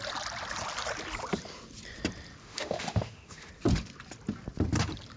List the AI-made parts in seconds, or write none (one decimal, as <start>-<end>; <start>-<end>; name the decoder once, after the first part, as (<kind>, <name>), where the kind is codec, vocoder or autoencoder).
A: 2.4-3.5 (autoencoder, DAC-VAE)